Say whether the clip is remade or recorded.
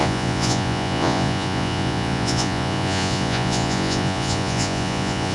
remade